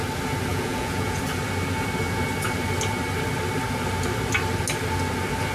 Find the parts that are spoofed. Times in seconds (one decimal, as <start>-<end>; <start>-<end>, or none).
0.5-1.2